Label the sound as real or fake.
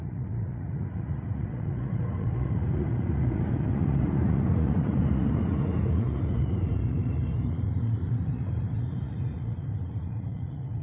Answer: fake